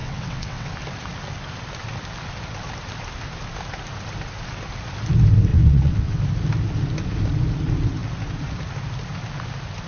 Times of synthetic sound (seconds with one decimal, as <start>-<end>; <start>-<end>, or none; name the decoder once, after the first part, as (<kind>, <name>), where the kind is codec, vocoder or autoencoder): 0.0-0.7 (vocoder, WaveNeXt); 5.5-6.2